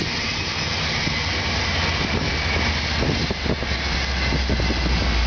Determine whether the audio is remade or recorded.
recorded